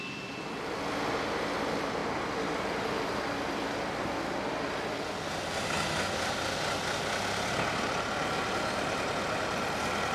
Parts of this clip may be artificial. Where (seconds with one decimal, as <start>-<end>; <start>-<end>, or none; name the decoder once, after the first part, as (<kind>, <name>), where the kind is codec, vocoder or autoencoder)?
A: none

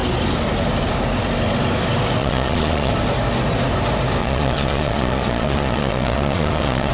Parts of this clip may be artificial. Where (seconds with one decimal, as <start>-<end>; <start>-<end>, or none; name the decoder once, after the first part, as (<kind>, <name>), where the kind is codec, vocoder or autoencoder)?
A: 2.2-2.9 (vocoder, Vocos); 4.2-6.9

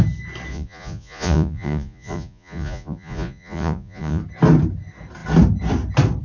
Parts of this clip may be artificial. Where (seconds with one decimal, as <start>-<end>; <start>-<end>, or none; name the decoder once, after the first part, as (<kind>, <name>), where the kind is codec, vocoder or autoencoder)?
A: 0.5-4.2 (vocoder, Vocos)

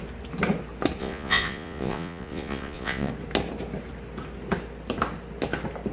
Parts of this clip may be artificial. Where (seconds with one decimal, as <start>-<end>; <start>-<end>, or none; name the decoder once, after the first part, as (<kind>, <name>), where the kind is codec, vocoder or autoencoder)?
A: 1.0-3.1 (vocoder, Vocos)

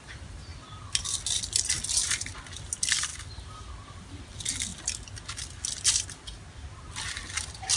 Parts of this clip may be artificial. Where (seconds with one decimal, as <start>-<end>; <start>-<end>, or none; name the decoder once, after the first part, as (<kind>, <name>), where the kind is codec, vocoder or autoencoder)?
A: none